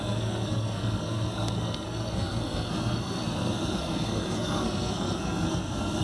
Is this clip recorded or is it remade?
remade